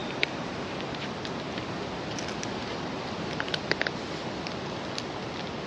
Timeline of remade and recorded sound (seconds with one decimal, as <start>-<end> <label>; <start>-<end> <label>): 0.0-1.6 remade; 1.6-2.7 recorded; 2.7-3.6 remade; 3.6-5.7 recorded